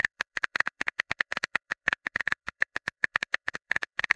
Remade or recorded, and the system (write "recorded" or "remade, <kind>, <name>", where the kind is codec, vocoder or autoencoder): remade, codec, SNAC